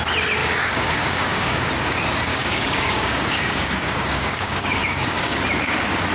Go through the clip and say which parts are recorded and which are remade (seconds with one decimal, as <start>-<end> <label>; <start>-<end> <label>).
0.0-0.4 recorded; 0.4-1.7 remade; 1.7-2.3 recorded; 2.3-5.4 remade; 5.4-6.1 recorded